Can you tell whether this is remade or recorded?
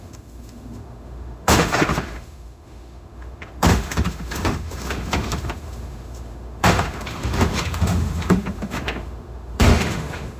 remade